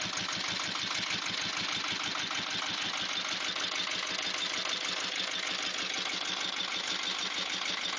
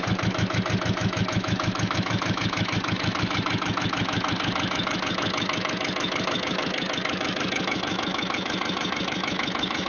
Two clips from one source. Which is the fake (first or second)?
second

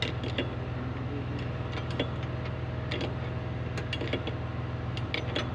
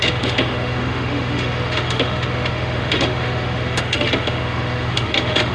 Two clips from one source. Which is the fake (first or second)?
second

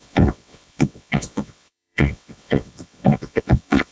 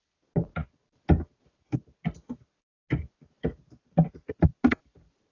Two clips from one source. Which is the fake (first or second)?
first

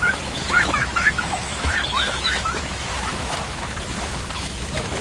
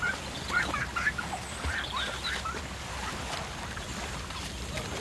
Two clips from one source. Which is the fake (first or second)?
first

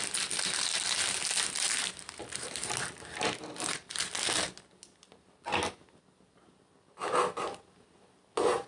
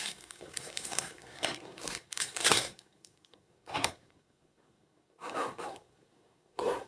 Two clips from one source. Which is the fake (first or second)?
second